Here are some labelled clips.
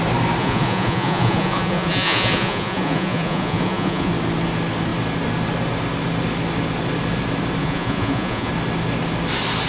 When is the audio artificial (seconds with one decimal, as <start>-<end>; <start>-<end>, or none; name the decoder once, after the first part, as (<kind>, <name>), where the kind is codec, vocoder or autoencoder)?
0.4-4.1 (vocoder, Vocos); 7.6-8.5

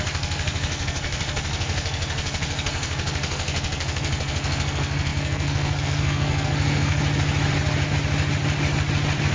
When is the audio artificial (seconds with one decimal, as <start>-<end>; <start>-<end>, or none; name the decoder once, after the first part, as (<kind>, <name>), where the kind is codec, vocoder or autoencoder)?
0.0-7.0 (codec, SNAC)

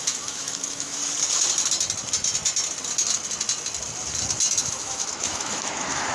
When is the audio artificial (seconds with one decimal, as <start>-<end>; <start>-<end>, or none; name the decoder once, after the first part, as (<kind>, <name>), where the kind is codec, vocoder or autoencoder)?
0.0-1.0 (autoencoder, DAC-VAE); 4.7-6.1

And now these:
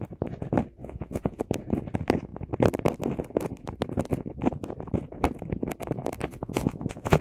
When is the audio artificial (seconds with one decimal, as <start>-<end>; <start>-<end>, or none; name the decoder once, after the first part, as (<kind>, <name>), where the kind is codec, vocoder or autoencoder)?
0.8-1.4 (vocoder, Vocos); 6.3-7.2

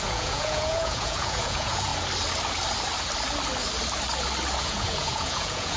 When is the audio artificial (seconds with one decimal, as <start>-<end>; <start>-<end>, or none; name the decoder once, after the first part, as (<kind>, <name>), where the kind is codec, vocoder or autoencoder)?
0.0-1.9 (vocoder, Vocos); 4.6-5.8

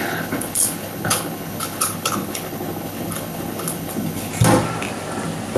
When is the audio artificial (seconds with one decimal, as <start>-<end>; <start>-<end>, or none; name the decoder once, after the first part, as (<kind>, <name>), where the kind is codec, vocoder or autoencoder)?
0.0-4.3 (codec, HILCodec)

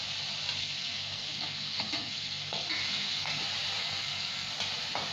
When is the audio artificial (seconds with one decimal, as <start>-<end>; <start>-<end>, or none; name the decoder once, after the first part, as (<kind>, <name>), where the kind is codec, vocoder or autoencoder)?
0.6-3.4 (codec, SNAC); 3.8-4.5